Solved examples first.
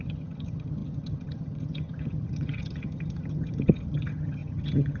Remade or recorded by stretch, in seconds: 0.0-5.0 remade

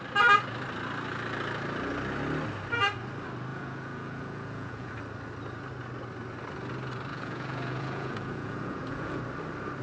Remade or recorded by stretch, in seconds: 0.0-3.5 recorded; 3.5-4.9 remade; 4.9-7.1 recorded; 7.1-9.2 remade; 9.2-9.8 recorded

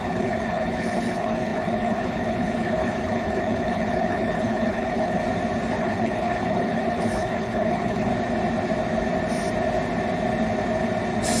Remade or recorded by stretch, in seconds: 0.0-5.2 remade; 5.2-5.8 recorded; 5.8-8.1 remade; 8.1-11.4 recorded

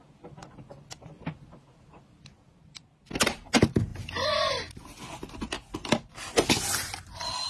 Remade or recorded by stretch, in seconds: 0.0-7.5 recorded

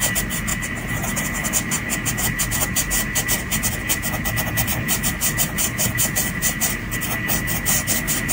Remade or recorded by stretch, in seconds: 0.0-4.7 recorded; 4.7-6.4 remade; 6.4-8.3 recorded